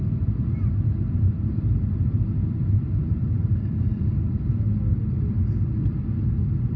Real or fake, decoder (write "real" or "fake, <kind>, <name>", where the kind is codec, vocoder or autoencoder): real